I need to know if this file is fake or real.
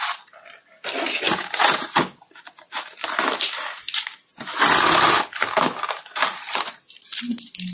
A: real